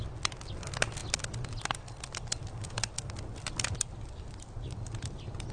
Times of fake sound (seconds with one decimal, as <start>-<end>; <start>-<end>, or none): none